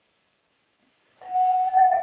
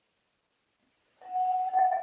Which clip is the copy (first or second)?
first